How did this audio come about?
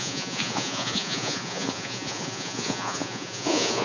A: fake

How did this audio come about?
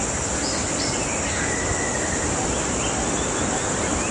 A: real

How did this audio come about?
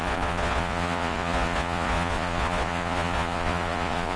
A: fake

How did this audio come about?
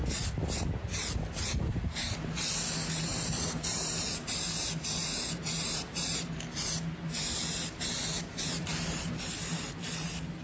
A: real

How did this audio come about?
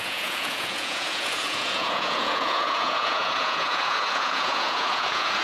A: fake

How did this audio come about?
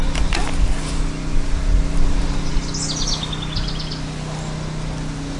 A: real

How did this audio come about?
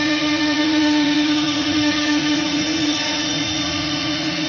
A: fake